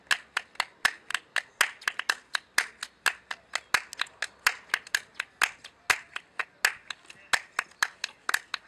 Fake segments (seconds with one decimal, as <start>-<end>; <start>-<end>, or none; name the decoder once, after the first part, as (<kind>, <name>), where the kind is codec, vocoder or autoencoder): none